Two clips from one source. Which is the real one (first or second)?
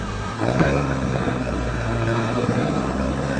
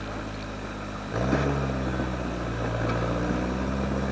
second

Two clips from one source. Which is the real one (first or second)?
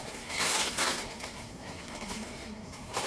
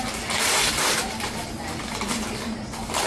second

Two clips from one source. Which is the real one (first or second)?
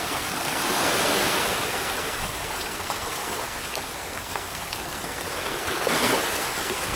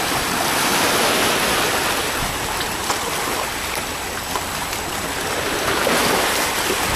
second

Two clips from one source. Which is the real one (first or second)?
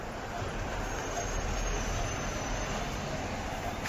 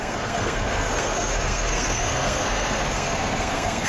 first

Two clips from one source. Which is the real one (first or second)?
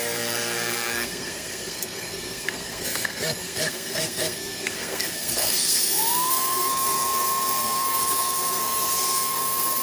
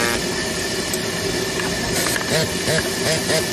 second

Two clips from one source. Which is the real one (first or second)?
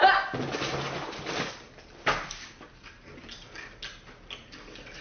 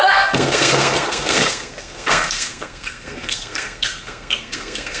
first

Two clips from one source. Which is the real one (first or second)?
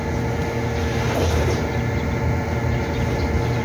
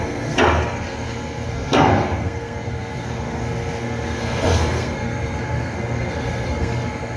first